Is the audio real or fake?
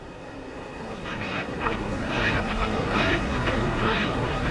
fake